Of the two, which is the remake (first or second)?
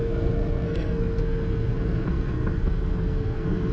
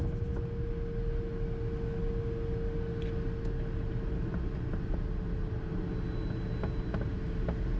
first